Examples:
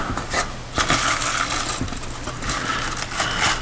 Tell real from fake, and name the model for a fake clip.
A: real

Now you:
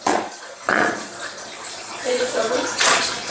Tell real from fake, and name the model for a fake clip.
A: fake, vocoder, Vocos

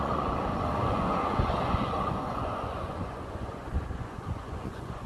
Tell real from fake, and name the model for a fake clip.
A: fake, vocoder, Vocos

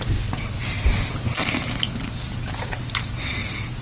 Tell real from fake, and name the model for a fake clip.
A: real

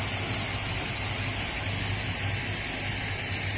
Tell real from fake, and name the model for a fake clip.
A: real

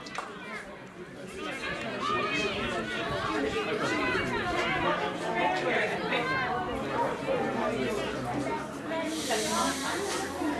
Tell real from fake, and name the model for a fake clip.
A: real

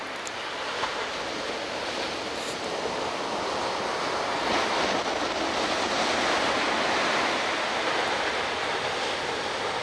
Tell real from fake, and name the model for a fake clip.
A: real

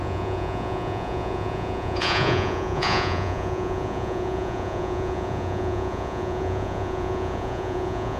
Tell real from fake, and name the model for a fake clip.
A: fake, vocoder, Vocos